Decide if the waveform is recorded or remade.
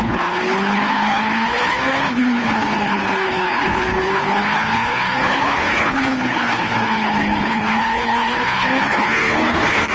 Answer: remade